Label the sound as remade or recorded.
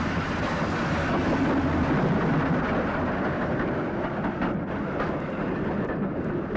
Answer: recorded